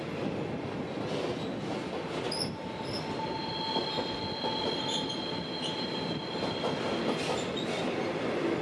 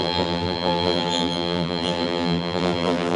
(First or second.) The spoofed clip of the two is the second